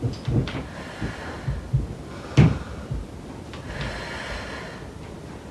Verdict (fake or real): real